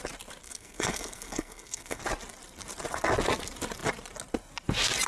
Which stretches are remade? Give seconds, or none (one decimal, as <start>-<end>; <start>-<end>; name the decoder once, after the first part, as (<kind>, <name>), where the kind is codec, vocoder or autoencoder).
0.4-2.0 (codec, SNAC)